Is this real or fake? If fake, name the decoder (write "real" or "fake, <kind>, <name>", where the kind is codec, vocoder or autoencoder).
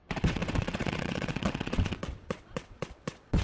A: fake, vocoder, WaveNeXt